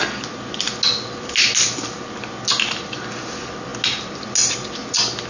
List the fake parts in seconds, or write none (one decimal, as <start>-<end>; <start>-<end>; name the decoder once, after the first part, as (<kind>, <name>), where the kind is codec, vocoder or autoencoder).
none